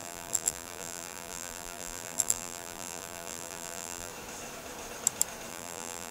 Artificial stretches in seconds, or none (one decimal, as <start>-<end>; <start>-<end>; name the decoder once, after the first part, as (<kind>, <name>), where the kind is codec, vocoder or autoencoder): 0.0-4.1 (vocoder, BigVGAN v2); 5.5-6.1